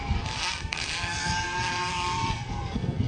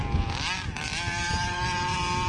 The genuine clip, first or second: second